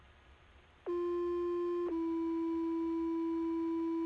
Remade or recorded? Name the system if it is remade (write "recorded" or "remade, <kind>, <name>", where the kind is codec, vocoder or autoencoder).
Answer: recorded